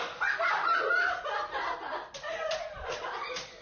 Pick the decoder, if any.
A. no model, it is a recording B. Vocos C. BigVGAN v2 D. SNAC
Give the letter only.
A